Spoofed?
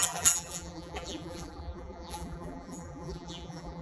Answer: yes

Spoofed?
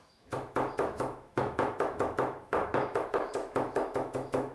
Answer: yes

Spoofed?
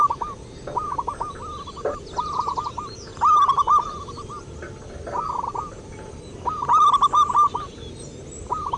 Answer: no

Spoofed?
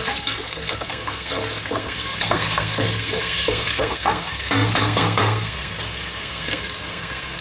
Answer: yes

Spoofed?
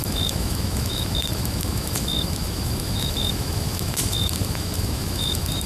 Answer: yes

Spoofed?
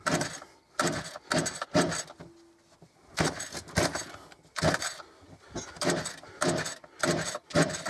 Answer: no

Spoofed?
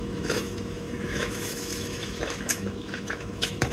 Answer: yes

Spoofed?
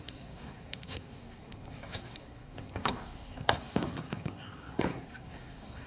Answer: yes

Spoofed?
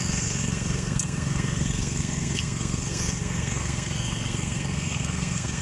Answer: yes